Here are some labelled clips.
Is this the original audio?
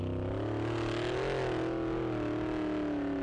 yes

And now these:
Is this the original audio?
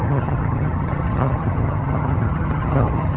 no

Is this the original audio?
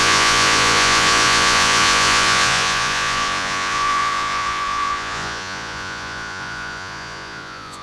no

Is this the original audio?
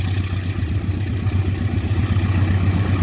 yes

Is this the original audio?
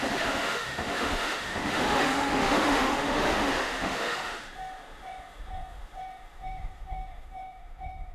no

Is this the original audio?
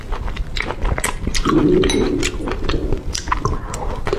yes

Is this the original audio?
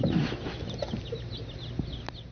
yes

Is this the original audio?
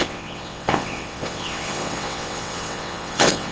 no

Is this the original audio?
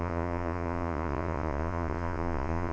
no